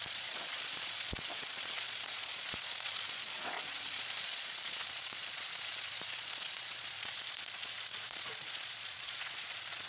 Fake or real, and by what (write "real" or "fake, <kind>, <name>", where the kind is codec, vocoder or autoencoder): fake, vocoder, Vocos